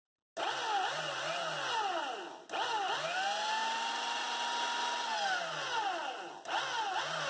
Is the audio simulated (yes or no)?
no